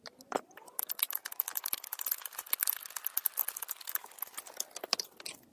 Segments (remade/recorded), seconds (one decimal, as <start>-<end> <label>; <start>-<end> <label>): 0.0-5.5 recorded

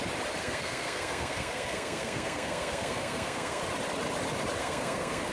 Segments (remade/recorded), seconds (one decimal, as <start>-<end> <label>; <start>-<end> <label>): 0.0-0.4 recorded; 0.4-3.6 remade; 3.6-4.6 recorded; 4.6-5.3 remade

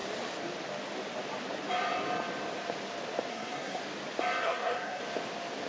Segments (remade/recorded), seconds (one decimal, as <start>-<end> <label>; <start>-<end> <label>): 0.0-3.3 recorded; 3.3-3.8 remade; 3.8-4.4 recorded; 4.4-5.0 remade; 5.0-5.7 recorded

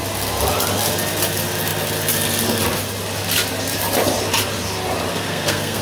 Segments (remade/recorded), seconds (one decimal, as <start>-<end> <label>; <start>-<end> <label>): 0.0-5.1 recorded; 5.1-5.8 remade

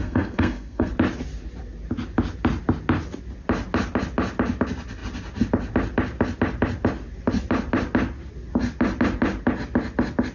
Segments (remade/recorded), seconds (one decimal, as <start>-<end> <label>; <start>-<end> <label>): 0.0-0.9 remade; 0.9-10.3 recorded

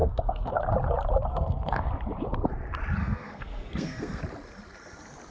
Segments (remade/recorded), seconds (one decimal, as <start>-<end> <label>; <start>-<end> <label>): 0.0-0.6 remade; 0.6-1.3 recorded; 1.3-1.9 remade; 1.9-3.0 recorded; 3.0-4.2 remade; 4.2-5.3 recorded

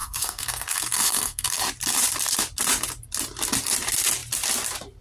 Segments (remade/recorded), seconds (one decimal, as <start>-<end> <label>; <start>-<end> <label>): 0.0-1.6 remade; 1.6-5.0 recorded

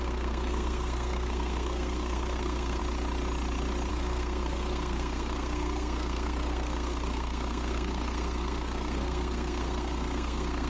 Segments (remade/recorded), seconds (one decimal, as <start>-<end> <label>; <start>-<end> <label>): 0.0-2.8 remade; 2.8-3.9 recorded; 3.9-10.7 remade